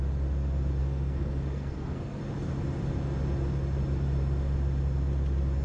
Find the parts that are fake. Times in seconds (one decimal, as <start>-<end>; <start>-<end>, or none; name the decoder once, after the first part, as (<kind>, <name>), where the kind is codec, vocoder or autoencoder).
0.8-2.2 (codec, SNAC)